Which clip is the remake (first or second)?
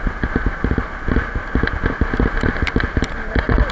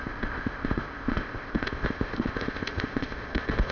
second